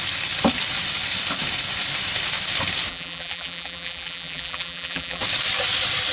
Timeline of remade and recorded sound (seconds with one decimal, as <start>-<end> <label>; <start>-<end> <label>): 0.0-2.9 recorded; 2.9-5.2 remade; 5.2-6.1 recorded